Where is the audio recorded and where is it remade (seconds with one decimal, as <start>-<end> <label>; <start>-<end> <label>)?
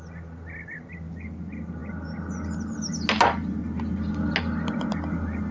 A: 0.0-5.5 recorded